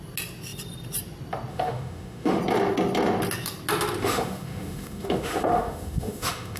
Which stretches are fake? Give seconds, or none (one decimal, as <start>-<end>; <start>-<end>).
1.5-2.4; 4.0-6.6